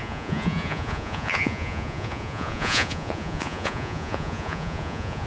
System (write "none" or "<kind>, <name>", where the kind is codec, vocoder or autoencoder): vocoder, Vocos